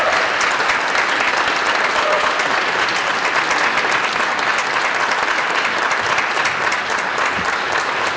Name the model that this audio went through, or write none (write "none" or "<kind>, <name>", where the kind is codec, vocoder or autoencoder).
none